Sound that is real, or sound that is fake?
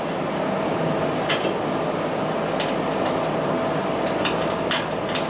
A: real